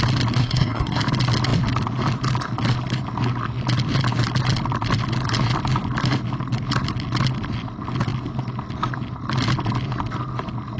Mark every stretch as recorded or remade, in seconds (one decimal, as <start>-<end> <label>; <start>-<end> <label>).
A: 0.0-0.4 recorded; 0.4-1.0 remade; 1.0-10.8 recorded

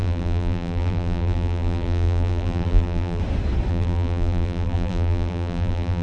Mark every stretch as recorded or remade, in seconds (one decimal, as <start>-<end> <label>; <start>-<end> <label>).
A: 0.0-3.2 remade; 3.2-3.7 recorded; 3.7-6.0 remade